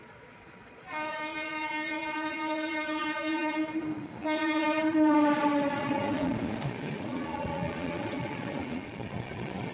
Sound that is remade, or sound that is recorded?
remade